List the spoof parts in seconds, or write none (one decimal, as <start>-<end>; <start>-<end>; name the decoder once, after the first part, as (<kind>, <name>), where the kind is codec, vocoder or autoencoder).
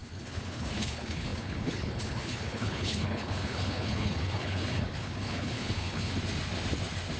0.0-6.1 (codec, HILCodec)